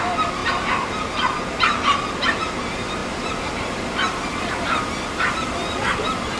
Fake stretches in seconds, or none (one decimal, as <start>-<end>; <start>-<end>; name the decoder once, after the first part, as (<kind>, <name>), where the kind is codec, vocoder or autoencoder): none